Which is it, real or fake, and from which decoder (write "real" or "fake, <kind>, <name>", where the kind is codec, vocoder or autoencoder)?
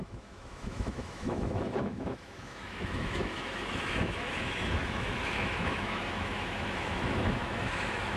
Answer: fake, autoencoder, DAC-VAE